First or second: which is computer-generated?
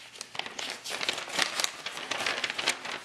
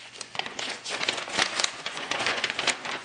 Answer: second